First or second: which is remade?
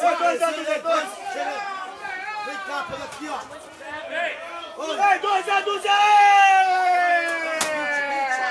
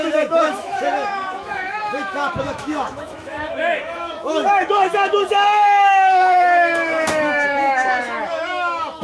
second